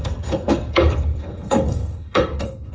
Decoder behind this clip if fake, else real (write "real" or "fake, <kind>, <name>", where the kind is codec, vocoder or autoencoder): fake, codec, SNAC